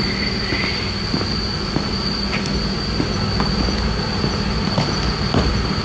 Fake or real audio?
real